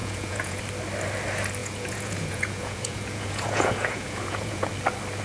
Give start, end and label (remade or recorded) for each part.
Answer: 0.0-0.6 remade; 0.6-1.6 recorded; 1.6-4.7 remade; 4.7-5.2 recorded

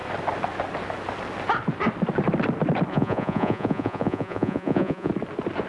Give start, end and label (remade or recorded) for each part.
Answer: 0.0-2.9 recorded; 2.9-5.1 remade; 5.1-5.7 recorded

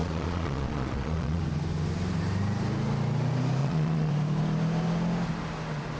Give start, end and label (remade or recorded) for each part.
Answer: 0.0-1.4 remade; 1.4-3.6 recorded; 3.6-4.1 remade; 4.1-6.0 recorded

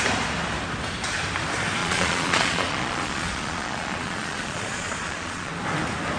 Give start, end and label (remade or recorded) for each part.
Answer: 0.0-1.8 recorded; 1.8-5.5 remade; 5.5-6.2 recorded

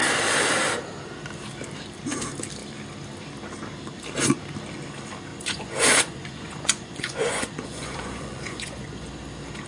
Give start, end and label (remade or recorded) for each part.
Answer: 0.0-5.3 recorded; 5.3-9.1 remade; 9.1-9.7 recorded